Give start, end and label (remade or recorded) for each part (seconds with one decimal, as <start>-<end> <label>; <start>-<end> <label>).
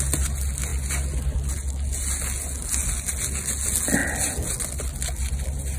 0.0-5.8 recorded